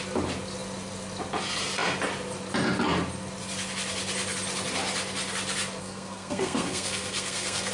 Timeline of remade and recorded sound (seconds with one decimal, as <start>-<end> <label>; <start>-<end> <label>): 0.0-5.8 recorded; 5.8-7.7 remade

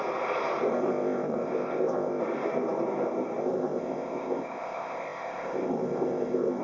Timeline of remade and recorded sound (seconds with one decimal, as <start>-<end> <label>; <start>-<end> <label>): 0.0-0.7 recorded; 0.7-2.2 remade; 2.2-3.4 recorded; 3.4-6.6 remade

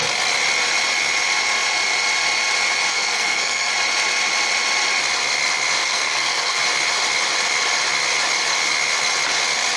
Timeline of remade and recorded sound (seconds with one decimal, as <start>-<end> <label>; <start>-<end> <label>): 0.0-2.9 recorded; 2.9-3.7 remade; 3.7-5.8 recorded; 5.8-6.6 remade; 6.6-9.8 recorded

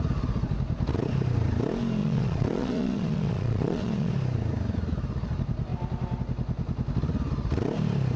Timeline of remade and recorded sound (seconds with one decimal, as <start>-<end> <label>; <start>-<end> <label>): 0.0-2.0 recorded; 2.0-4.1 remade; 4.1-8.2 recorded

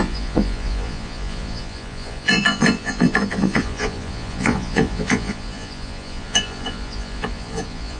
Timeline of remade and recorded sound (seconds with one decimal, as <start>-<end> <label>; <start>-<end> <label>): 0.0-8.0 remade

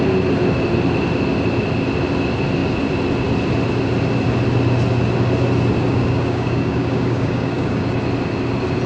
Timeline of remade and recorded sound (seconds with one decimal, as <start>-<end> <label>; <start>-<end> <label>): 0.0-5.9 recorded; 5.9-8.0 remade; 8.0-8.9 recorded

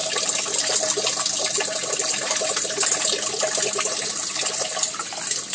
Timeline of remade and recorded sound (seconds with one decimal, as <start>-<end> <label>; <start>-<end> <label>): 0.0-5.5 recorded

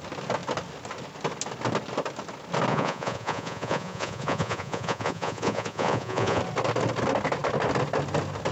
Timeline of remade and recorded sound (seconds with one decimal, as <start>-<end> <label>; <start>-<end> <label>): 0.0-2.7 recorded; 2.7-6.4 remade; 6.4-8.5 recorded